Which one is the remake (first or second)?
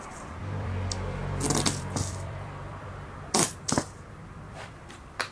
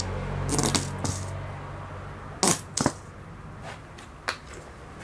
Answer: first